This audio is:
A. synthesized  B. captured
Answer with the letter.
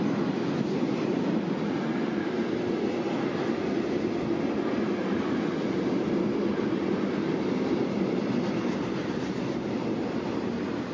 B